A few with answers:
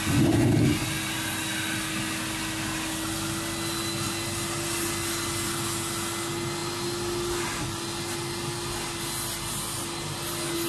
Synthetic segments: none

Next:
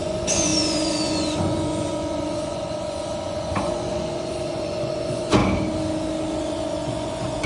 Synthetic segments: 0.0-5.4 (vocoder, Vocos); 6.3-7.5